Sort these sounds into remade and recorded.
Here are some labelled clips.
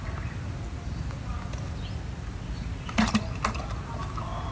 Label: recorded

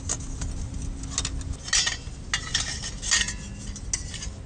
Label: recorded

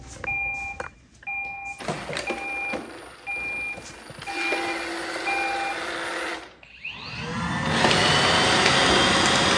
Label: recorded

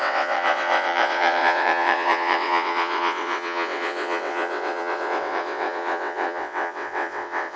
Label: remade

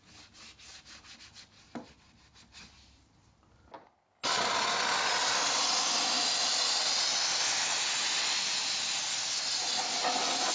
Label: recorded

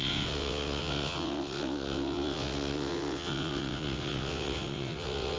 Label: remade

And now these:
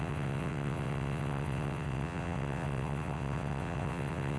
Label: remade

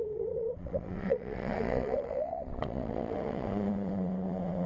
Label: remade